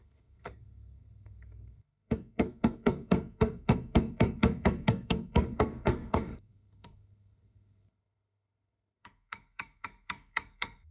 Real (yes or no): no